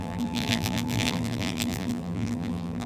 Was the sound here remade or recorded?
remade